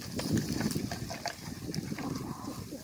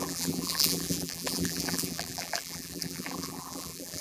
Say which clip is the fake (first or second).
second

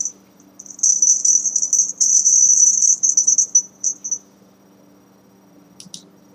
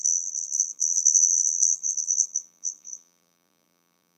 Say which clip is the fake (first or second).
second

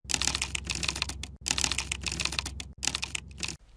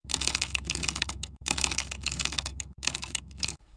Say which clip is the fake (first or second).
second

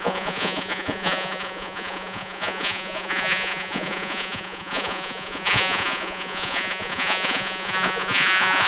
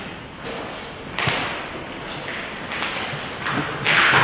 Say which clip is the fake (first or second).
first